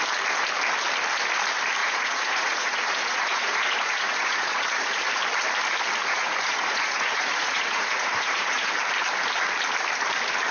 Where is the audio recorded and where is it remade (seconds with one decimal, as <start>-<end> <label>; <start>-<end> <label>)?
0.0-1.8 recorded; 1.8-5.0 remade; 5.0-6.0 recorded; 6.0-8.7 remade; 8.7-10.5 recorded